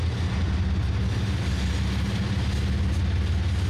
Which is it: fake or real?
real